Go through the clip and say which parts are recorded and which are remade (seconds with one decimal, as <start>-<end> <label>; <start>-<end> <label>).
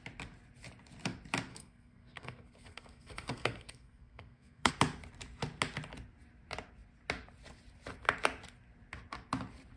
0.0-1.5 recorded; 1.5-4.7 remade; 4.7-9.8 recorded